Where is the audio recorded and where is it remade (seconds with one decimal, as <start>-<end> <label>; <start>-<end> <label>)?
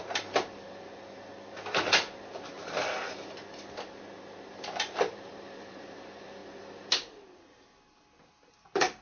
0.0-1.3 remade; 1.3-4.5 recorded; 4.5-6.4 remade; 6.4-8.5 recorded; 8.5-9.0 remade